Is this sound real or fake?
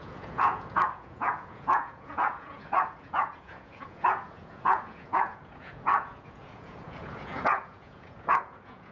fake